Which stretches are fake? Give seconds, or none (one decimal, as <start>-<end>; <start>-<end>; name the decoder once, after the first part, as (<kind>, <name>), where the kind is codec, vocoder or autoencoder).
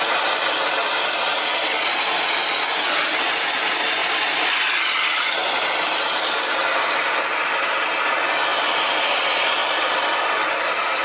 1.5-2.4 (vocoder, BigVGAN v2); 4.0-5.2; 8.5-9.2